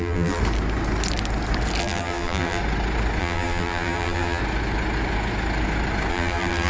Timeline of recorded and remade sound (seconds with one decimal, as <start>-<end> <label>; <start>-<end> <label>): 0.0-0.4 remade; 0.4-1.8 recorded; 1.8-2.6 remade; 2.6-3.2 recorded; 3.2-4.4 remade; 4.4-6.1 recorded; 6.1-6.7 remade